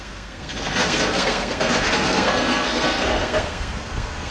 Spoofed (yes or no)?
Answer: yes